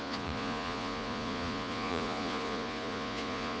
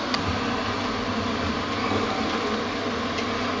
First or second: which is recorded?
second